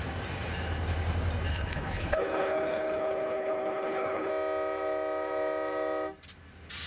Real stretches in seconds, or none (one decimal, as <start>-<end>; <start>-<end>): 0.0-1.5; 4.3-6.9